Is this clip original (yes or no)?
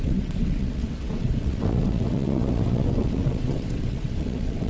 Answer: no